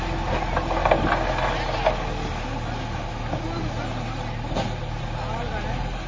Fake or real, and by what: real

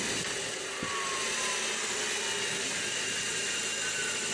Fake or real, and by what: real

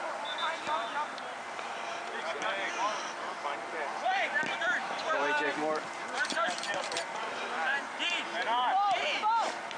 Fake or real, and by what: fake, vocoder, BigVGAN v2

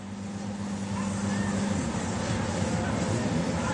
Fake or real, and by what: real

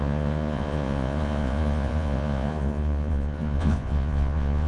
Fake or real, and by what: fake, vocoder, Vocos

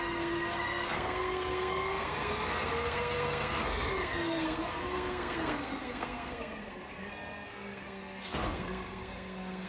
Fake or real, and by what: fake, codec, SNAC